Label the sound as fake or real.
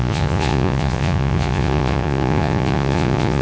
fake